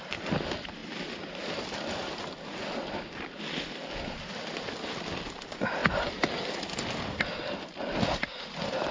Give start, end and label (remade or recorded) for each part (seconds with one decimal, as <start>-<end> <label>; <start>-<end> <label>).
0.0-8.9 recorded